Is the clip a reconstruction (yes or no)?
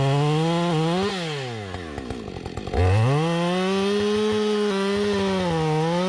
no